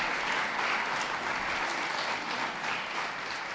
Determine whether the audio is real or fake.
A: real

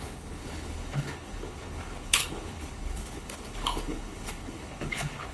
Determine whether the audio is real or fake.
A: fake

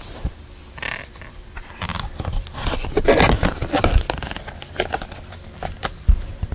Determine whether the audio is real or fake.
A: real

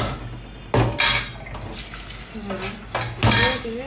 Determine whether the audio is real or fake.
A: real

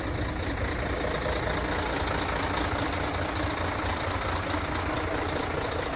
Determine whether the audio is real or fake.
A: real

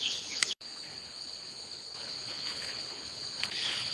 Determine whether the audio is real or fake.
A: fake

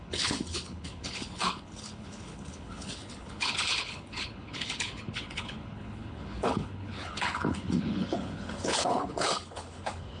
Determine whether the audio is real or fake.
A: fake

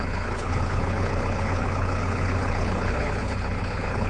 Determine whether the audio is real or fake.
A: fake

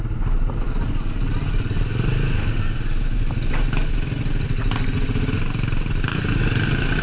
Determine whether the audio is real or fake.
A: real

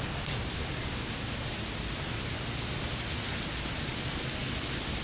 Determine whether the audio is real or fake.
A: real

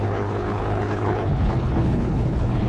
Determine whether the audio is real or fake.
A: fake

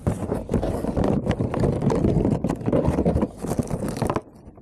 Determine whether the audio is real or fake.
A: real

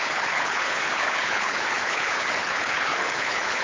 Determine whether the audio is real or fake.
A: fake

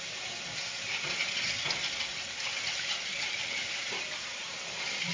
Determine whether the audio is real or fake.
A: real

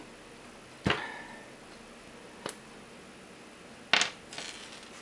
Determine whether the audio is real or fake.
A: real